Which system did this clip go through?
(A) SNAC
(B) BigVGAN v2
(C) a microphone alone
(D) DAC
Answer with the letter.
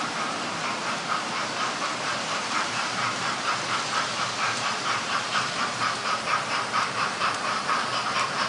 B